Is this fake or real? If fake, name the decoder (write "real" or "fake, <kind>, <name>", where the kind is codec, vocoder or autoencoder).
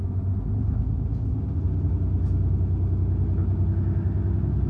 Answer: real